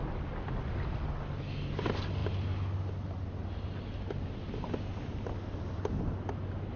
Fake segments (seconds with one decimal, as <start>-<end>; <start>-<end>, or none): none